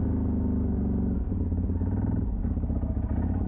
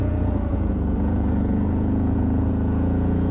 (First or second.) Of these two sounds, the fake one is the second